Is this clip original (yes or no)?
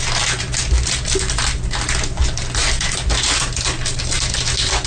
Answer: yes